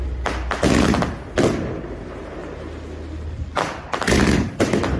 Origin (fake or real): real